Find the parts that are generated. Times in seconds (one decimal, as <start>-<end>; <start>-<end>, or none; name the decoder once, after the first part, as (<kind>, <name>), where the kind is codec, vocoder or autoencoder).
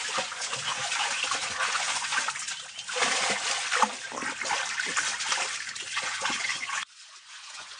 0.0-0.7 (vocoder, Vocos); 1.4-2.1; 5.8-7.8